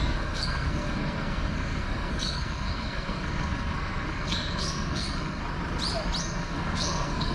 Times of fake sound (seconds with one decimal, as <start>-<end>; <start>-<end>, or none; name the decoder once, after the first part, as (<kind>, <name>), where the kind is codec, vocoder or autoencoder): 0.0-5.4 (codec, SNAC); 6.2-7.3

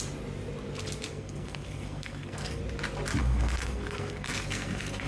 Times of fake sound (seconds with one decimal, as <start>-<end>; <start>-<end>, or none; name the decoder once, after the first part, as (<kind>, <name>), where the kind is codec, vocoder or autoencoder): 1.1-2.6 (codec, SNAC); 3.2-5.1

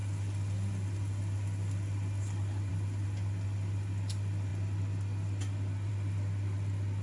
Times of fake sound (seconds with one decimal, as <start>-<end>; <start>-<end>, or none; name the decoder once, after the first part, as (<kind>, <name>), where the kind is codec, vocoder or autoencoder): none

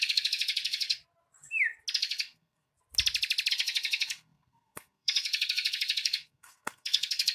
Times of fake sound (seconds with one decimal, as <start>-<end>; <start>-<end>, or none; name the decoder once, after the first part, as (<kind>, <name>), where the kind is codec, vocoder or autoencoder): 0.0-1.0 (codec, SNAC); 1.9-2.7; 3.5-7.3